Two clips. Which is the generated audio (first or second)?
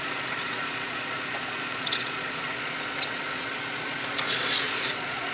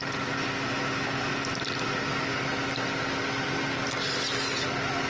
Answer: first